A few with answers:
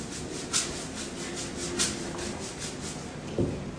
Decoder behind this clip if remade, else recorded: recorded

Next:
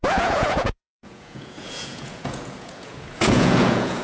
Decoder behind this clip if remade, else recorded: remade, vocoder, Vocos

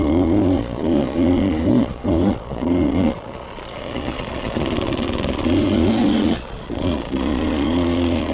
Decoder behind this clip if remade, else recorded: remade, vocoder, Vocos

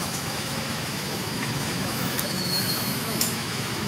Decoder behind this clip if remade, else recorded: remade, autoencoder, DAC-VAE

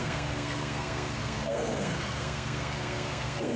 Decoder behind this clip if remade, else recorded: remade, codec, SNAC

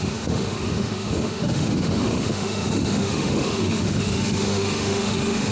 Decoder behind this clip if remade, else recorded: remade, autoencoder, DAC-VAE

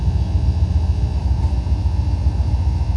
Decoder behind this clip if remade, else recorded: recorded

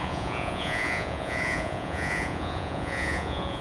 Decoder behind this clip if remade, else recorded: remade, vocoder, Vocos